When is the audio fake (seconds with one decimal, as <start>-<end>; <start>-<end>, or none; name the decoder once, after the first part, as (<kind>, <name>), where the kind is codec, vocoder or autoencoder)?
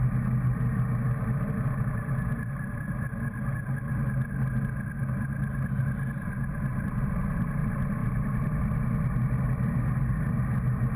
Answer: none